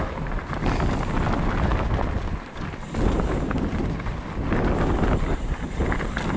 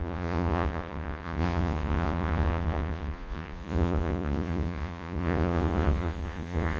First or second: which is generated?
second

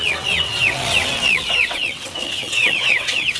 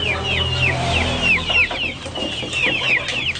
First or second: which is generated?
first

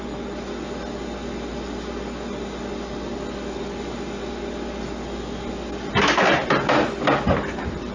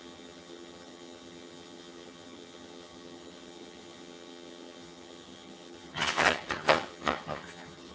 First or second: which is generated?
second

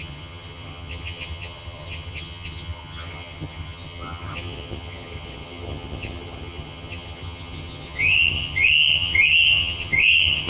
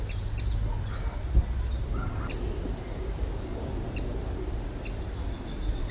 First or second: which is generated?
first